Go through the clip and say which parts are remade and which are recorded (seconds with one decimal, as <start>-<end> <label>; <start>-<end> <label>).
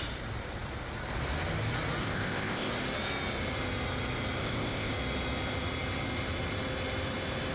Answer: 0.0-2.0 recorded; 2.0-2.7 remade; 2.7-4.4 recorded; 4.4-4.9 remade; 4.9-7.5 recorded